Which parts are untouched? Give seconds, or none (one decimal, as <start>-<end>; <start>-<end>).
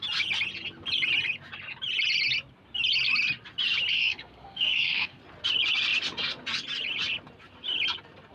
0.0-3.9; 5.2-8.3